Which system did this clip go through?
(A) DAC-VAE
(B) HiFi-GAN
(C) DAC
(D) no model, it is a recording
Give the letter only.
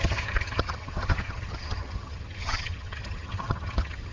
B